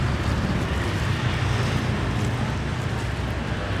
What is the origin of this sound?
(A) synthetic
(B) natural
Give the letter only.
B